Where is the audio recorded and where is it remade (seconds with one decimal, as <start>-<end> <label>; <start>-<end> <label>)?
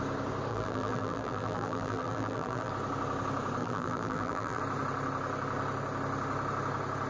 0.0-0.5 recorded; 0.5-2.7 remade; 2.7-3.6 recorded; 3.6-4.6 remade; 4.6-7.1 recorded